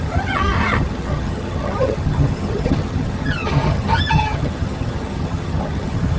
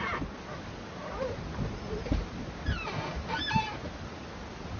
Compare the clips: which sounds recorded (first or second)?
second